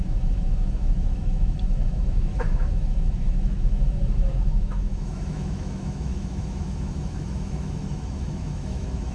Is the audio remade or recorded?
remade